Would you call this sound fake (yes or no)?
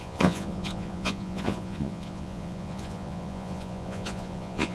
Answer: yes